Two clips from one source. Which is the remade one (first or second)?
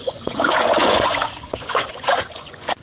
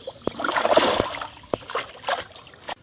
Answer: first